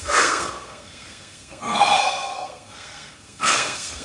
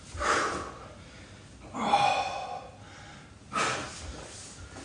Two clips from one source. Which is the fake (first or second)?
first